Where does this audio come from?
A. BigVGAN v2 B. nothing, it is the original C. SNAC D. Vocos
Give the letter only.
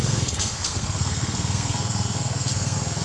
C